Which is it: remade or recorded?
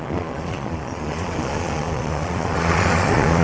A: remade